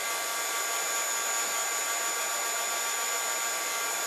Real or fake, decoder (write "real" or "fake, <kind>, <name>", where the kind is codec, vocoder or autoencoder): real